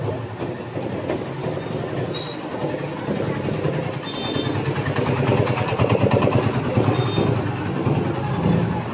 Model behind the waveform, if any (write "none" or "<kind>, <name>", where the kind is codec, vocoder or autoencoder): none